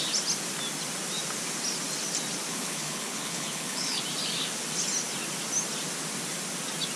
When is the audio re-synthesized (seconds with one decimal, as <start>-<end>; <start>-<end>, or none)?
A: 2.5-4.0